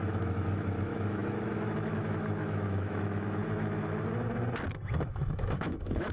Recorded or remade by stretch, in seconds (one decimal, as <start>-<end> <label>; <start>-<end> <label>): 0.0-3.4 remade; 3.4-4.9 recorded; 4.9-6.1 remade

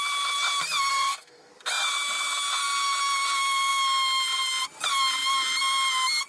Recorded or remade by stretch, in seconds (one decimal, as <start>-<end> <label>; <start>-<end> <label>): 0.0-0.9 recorded; 0.9-1.5 remade; 1.5-6.3 recorded